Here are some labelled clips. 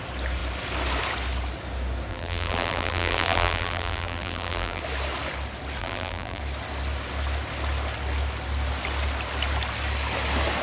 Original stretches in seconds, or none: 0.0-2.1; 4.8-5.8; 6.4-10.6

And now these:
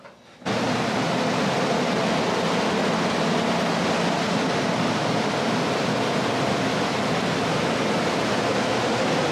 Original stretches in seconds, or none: 0.0-9.3